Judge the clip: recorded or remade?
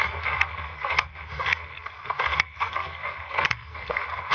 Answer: remade